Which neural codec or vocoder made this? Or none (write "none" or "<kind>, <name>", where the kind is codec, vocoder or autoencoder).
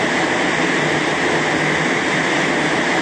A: none